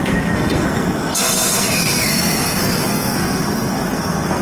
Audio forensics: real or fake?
fake